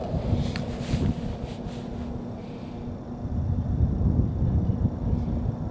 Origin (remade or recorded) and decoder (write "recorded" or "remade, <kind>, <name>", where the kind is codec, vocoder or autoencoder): recorded